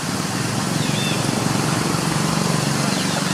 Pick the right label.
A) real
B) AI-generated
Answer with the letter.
A